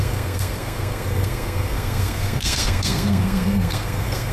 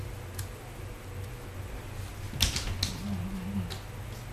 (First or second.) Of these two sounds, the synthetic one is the first